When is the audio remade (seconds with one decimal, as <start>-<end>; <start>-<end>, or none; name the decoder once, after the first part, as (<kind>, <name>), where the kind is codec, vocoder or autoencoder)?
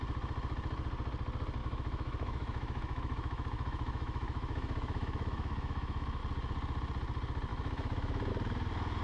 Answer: 1.6-6.2 (autoencoder, DAC-VAE); 7.5-8.3